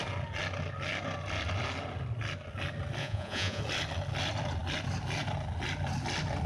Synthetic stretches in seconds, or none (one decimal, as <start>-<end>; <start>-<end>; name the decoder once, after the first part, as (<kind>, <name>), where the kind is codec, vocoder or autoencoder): 3.0-3.6 (vocoder, Vocos)